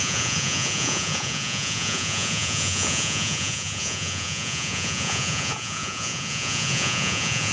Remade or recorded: remade